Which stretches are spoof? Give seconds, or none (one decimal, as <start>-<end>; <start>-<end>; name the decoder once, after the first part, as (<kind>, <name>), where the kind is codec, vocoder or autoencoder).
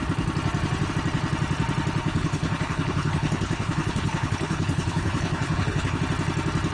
2.0-6.0 (codec, HILCodec)